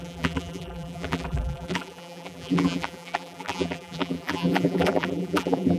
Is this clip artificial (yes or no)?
yes